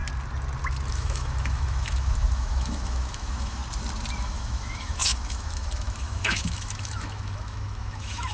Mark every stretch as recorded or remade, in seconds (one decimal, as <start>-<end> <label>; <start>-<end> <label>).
0.0-0.9 recorded; 0.9-3.6 remade; 3.6-4.2 recorded; 4.2-8.3 remade